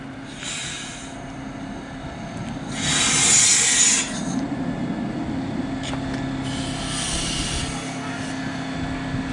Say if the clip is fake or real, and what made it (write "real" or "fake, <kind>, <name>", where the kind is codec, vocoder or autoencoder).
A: real